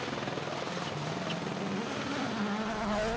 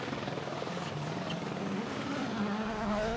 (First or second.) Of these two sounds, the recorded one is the first